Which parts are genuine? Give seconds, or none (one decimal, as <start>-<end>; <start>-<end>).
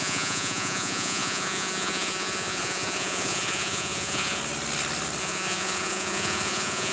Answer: 4.4-5.2